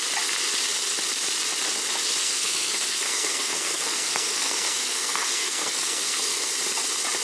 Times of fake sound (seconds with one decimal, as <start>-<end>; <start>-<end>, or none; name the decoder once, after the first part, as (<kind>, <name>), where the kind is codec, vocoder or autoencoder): 2.2-6.5 (codec, SNAC)